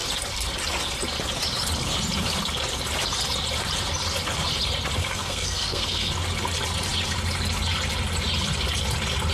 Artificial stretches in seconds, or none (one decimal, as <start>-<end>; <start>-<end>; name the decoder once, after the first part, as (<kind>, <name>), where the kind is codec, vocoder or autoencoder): 5.0-6.1 (codec, SNAC)